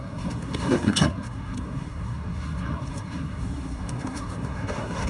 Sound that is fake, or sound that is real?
fake